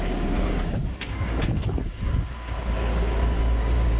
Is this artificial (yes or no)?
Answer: yes